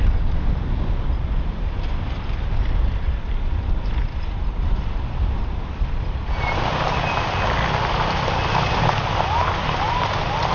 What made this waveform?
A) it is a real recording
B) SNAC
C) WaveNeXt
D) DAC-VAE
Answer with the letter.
A